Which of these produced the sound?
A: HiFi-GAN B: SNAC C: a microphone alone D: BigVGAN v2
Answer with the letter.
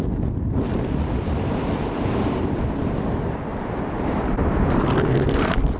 D